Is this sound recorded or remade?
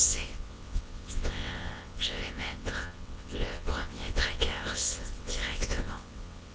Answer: remade